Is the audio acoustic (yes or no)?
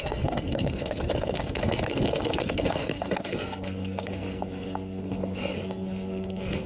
no